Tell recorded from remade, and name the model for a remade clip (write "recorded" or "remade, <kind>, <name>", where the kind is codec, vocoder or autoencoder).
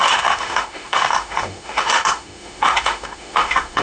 remade, autoencoder, DAC-VAE